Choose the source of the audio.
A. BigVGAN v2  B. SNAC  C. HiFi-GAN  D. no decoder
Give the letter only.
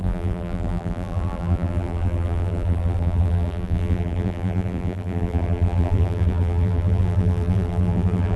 A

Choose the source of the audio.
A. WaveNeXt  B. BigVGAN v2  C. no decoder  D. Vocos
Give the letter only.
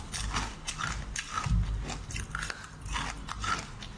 C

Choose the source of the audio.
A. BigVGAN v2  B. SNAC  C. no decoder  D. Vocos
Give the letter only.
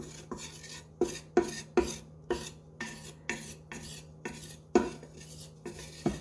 C